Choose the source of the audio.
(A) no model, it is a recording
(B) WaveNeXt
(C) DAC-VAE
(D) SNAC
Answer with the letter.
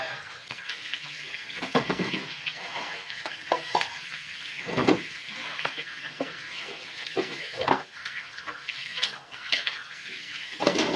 D